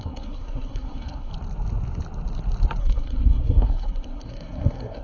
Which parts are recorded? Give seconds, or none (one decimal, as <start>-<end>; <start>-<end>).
1.3-2.8